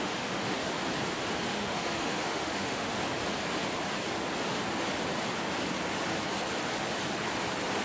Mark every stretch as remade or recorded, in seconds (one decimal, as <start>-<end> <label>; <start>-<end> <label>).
0.0-0.6 remade; 0.6-1.5 recorded; 1.5-3.0 remade; 3.0-7.8 recorded